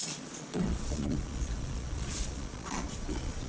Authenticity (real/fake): fake